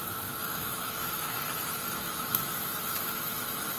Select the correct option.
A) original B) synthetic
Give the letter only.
B